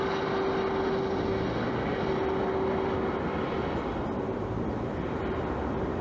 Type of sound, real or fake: real